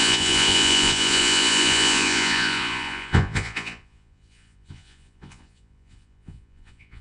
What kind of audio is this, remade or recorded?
remade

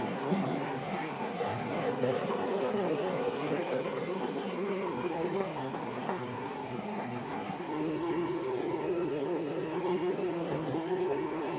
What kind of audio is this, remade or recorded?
remade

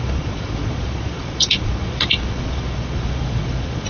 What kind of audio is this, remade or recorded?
remade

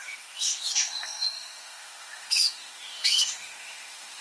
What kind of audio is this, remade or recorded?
remade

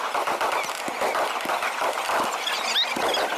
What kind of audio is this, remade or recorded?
recorded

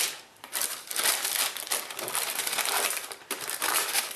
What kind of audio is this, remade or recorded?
remade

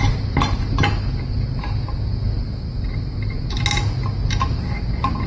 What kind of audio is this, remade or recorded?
recorded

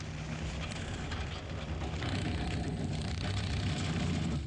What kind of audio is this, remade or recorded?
recorded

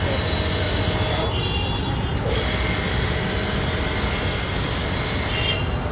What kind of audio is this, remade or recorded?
recorded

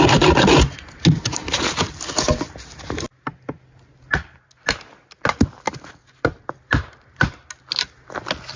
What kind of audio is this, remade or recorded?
recorded